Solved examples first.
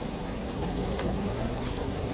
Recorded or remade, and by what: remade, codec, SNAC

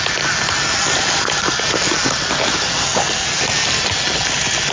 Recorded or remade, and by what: recorded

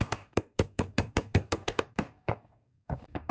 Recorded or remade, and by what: remade, codec, DAC